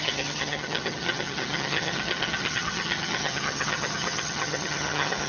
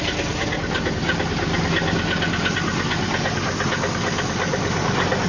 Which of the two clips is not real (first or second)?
first